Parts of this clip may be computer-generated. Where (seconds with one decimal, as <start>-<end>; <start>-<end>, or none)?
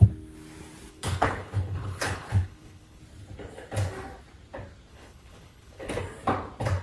0.9-3.0; 4.9-6.0